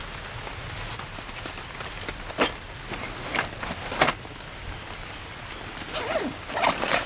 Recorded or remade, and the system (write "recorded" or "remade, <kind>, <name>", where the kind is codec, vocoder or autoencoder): recorded